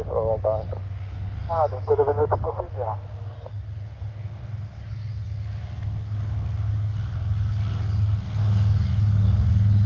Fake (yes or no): no